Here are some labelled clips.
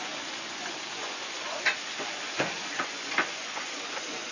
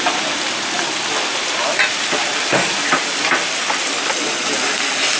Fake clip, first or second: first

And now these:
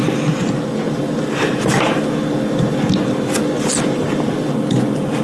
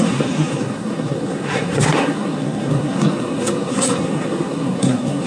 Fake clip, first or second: second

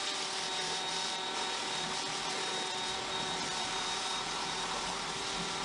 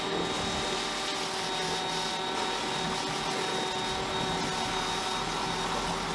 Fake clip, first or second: first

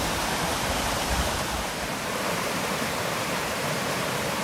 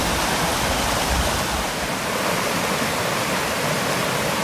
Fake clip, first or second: first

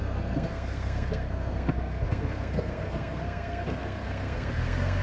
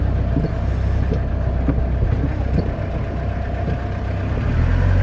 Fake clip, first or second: first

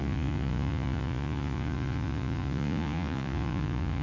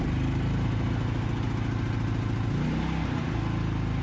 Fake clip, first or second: first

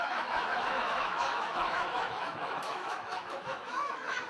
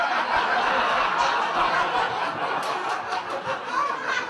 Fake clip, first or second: first